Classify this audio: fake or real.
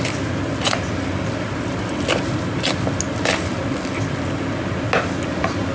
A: real